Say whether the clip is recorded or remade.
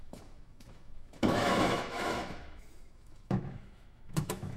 remade